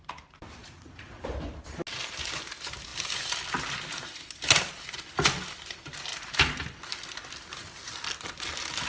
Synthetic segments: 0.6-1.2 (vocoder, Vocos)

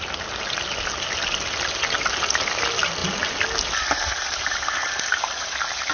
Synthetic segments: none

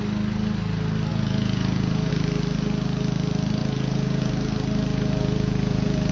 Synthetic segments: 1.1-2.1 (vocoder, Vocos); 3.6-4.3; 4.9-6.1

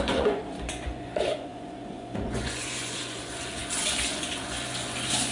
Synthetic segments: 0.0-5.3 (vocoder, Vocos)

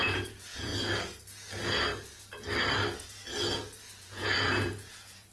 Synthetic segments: 0.0-0.7 (vocoder, Vocos); 3.9-5.3

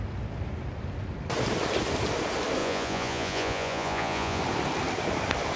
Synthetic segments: 2.6-4.4 (vocoder, Vocos)

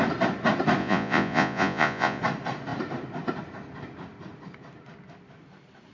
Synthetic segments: 0.8-2.2 (vocoder, Vocos)

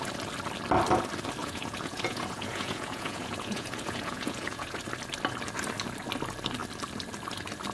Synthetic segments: 1.4-4.8 (vocoder, Vocos)